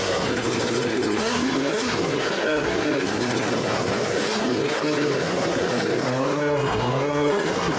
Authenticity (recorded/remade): remade